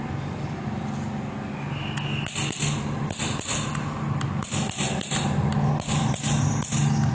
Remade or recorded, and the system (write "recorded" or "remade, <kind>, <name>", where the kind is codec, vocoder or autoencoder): recorded